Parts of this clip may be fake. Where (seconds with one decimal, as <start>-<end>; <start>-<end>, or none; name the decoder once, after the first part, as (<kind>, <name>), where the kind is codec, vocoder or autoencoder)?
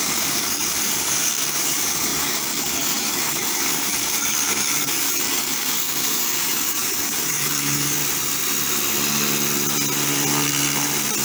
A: 0.0-8.0 (codec, DAC)